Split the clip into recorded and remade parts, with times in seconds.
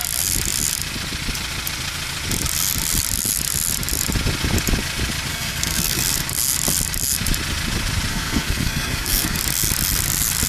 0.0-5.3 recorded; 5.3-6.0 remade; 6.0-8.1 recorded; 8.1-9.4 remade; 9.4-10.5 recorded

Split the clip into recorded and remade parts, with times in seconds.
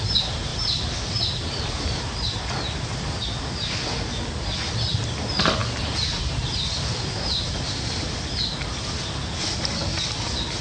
0.0-0.5 recorded; 0.5-2.0 remade; 2.0-5.6 recorded; 5.6-9.4 remade; 9.4-10.6 recorded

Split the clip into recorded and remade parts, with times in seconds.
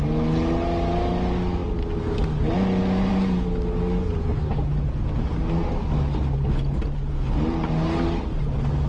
0.0-8.9 recorded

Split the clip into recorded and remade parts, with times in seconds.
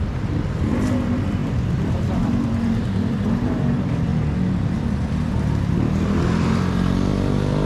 0.0-4.1 remade; 4.1-4.8 recorded; 4.8-7.1 remade; 7.1-7.7 recorded